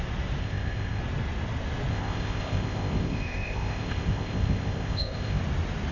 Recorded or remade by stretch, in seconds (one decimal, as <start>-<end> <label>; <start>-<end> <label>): 0.0-0.4 recorded; 0.4-1.0 remade; 1.0-1.9 recorded; 1.9-5.4 remade; 5.4-5.9 recorded